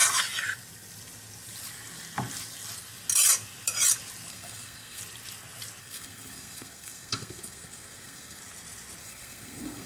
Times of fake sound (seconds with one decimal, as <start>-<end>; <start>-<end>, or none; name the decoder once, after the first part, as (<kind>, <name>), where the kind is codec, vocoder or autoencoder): 4.3-5.0 (codec, SNAC); 5.8-8.4; 9.0-9.9